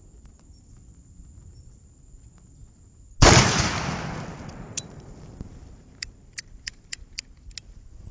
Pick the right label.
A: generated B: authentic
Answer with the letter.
B